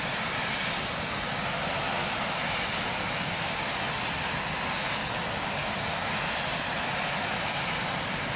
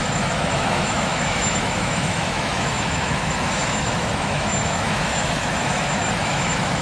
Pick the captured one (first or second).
first